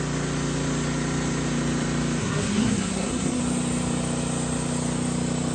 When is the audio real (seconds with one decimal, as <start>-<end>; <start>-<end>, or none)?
0.0-2.2; 3.4-5.5